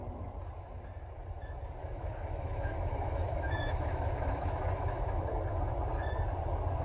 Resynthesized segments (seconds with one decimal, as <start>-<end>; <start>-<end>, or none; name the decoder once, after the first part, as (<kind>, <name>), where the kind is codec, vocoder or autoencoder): 1.8-5.2 (autoencoder, DAC-VAE)